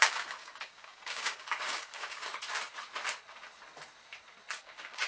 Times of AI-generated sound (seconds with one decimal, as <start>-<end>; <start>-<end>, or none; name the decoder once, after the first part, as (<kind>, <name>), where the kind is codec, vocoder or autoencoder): 0.0-2.3 (codec, DAC); 4.6-5.1